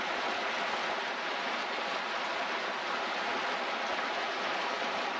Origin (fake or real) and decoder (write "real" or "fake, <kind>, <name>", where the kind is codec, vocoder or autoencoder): real